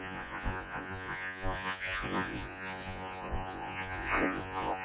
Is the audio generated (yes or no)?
yes